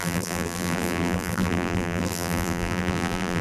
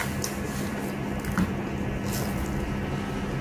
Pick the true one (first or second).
second